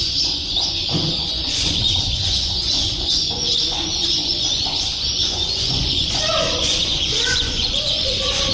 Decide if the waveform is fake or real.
fake